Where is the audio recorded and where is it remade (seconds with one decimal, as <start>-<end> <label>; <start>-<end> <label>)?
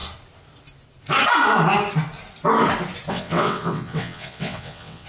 0.0-3.1 recorded; 3.1-5.1 remade